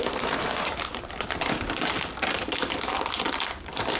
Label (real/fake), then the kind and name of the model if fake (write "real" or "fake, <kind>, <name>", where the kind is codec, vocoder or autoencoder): real